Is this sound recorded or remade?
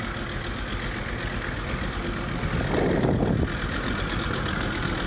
recorded